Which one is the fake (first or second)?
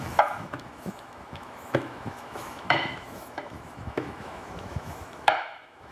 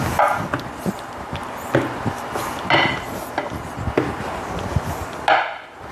first